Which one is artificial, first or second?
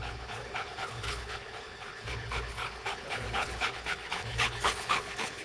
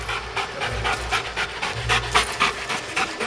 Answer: first